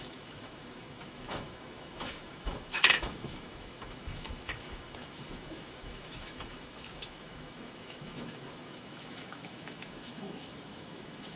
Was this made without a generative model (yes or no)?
no